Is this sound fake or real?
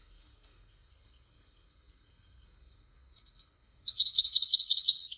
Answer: fake